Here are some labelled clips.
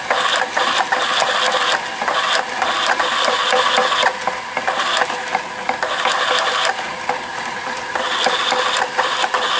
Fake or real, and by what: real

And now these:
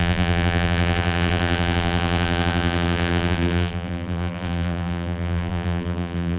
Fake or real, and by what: fake, vocoder, BigVGAN v2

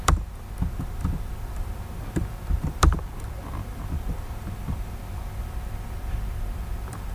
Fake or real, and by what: fake, vocoder, BigVGAN v2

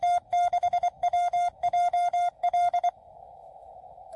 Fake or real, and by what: fake, autoencoder, DAC-VAE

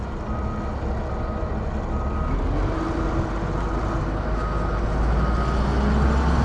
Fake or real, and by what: real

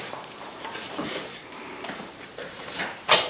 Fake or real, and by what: fake, vocoder, BigVGAN v2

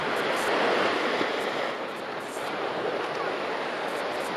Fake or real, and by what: real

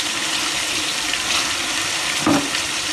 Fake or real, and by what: fake, vocoder, BigVGAN v2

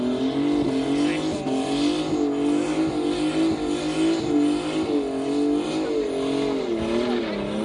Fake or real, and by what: real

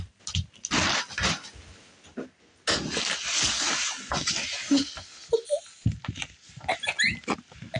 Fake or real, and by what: real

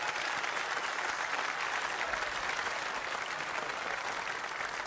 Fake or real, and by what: real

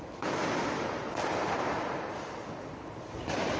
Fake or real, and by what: fake, vocoder, BigVGAN v2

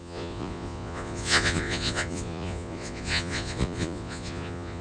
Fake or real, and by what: fake, vocoder, Vocos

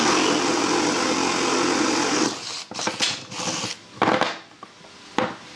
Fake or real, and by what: real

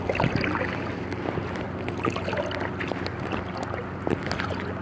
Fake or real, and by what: real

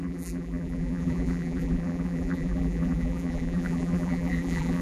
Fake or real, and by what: fake, vocoder, BigVGAN v2